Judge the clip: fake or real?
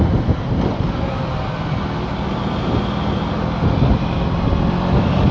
real